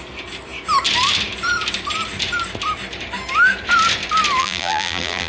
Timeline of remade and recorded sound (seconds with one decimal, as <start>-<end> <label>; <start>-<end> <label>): 0.0-4.4 recorded; 4.4-5.3 remade